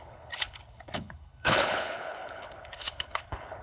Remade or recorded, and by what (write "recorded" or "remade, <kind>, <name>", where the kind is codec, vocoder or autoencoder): remade, codec, HILCodec